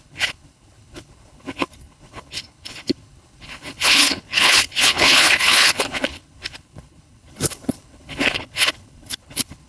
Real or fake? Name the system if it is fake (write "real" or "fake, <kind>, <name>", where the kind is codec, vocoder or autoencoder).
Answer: fake, codec, HILCodec